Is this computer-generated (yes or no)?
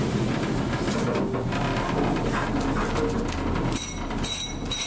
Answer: no